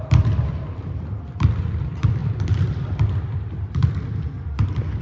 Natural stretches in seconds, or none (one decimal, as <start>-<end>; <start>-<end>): 3.8-5.0